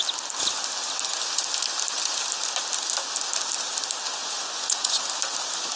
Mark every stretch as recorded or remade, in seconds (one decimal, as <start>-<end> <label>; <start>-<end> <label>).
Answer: 0.0-4.2 recorded; 4.2-4.9 remade; 4.9-5.8 recorded